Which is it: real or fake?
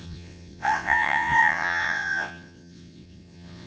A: fake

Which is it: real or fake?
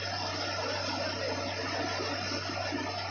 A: real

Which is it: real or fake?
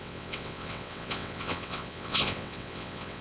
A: fake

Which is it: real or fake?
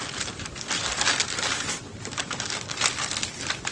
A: real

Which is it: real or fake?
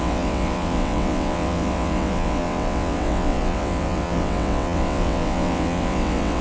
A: fake